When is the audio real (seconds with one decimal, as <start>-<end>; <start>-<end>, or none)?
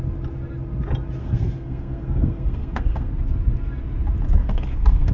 0.0-1.2; 3.1-4.4